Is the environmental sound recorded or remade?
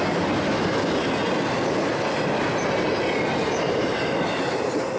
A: recorded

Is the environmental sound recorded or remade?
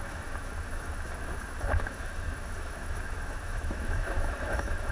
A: remade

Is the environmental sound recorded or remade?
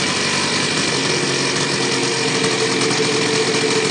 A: recorded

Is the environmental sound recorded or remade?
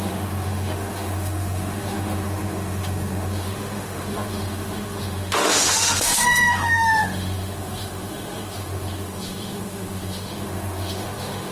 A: remade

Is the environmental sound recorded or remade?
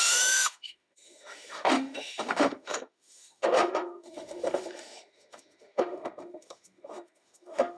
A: remade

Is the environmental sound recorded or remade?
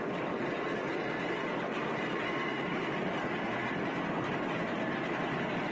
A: recorded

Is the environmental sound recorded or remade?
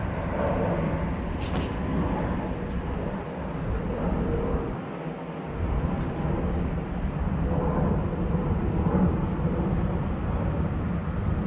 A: recorded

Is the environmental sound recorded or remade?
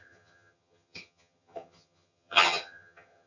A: remade